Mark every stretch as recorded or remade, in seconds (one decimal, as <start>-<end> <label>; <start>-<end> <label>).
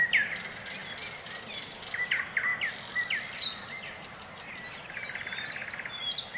0.0-6.4 recorded